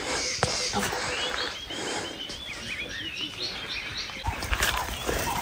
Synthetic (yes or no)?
yes